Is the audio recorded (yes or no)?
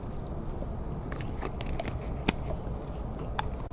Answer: yes